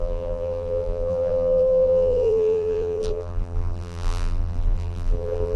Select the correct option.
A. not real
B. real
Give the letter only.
A